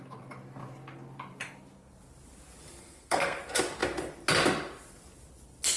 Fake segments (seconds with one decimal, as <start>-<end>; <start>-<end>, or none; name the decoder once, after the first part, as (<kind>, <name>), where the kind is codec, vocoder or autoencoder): 2.8-3.4 (codec, SNAC)